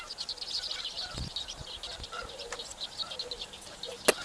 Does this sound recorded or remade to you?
recorded